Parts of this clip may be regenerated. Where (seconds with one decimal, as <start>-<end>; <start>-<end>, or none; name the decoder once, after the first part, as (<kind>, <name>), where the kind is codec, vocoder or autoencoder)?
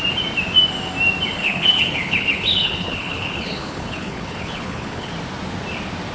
1.4-5.1 (codec, HILCodec)